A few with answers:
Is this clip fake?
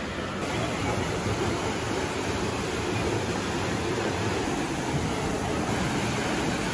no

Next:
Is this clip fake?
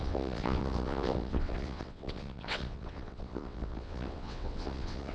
yes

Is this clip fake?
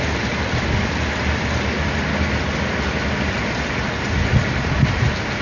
no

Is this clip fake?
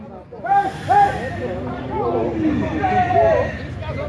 no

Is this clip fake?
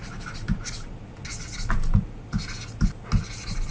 no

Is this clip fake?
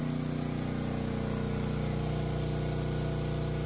no